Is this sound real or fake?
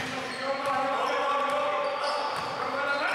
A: real